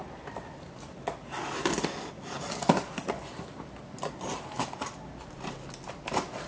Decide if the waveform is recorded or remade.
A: recorded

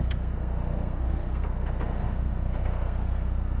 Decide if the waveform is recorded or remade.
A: remade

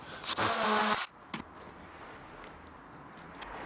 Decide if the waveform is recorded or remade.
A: recorded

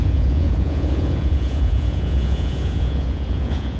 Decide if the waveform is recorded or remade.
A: remade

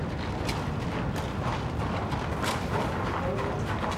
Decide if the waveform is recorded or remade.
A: recorded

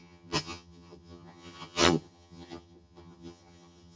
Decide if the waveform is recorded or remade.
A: remade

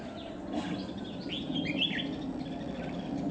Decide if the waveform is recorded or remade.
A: recorded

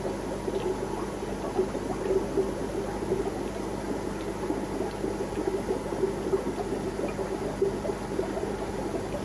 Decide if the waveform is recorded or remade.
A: recorded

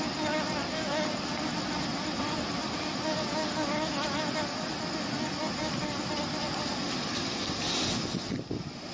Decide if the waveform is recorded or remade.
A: recorded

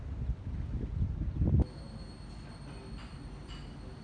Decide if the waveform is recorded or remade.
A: recorded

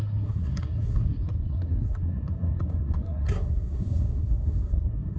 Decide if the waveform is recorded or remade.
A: remade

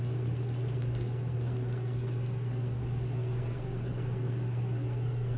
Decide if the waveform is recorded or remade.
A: remade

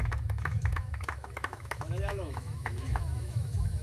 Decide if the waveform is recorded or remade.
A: remade